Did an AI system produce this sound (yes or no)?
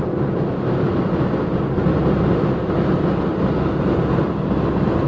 no